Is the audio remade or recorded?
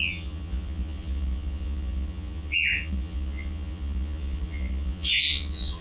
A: remade